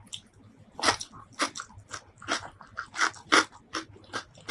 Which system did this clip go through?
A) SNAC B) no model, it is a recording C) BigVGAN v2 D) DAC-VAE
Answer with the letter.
B